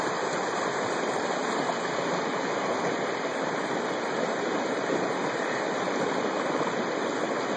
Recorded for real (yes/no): yes